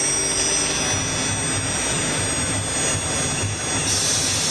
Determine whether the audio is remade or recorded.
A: recorded